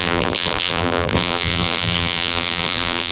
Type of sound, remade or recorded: remade